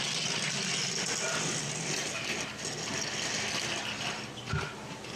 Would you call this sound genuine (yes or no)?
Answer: yes